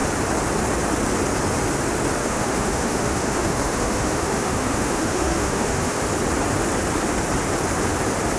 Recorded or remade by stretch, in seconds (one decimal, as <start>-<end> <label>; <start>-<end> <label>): 0.0-2.2 recorded; 2.2-6.0 remade; 6.0-8.4 recorded